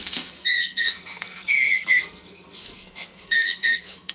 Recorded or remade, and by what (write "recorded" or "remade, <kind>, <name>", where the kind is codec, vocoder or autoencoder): remade, codec, SNAC